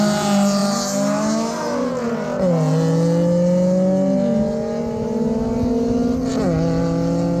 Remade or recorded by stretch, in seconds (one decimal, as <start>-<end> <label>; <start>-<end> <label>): 0.0-7.4 recorded